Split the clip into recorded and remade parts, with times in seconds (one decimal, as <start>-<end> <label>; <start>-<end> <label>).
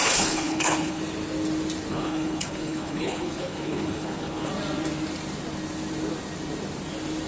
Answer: 0.0-1.0 remade; 1.0-1.9 recorded; 1.9-4.5 remade; 4.5-7.3 recorded